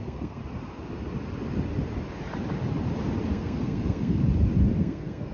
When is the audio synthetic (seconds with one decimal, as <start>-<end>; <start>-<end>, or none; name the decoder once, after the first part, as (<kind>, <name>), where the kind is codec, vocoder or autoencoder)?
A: 0.0-0.4 (codec, SNAC); 3.3-4.2; 4.8-5.3